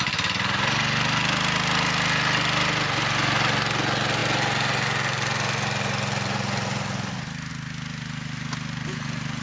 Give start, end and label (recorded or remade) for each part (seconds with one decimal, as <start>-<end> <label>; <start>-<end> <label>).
0.0-9.4 recorded